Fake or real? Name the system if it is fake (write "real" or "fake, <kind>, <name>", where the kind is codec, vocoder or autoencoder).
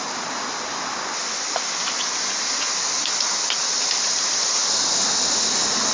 real